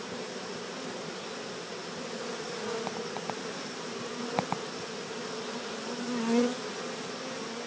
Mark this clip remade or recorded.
recorded